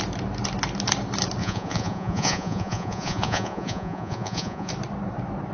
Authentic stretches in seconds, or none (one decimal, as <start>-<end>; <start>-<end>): 0.0-1.4; 4.7-5.5